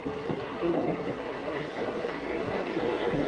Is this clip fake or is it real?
fake